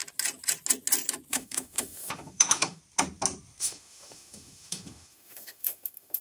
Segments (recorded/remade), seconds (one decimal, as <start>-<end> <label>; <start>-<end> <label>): 0.0-1.3 recorded; 1.3-2.8 remade; 2.8-3.6 recorded; 3.6-6.2 remade